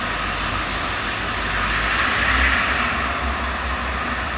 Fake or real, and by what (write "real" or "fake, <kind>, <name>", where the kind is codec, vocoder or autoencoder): real